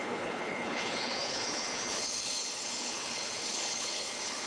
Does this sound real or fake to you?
fake